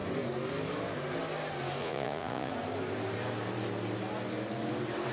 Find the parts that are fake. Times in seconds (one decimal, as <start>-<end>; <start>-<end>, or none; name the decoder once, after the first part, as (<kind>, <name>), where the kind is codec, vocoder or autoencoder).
1.8-2.5 (vocoder, Vocos)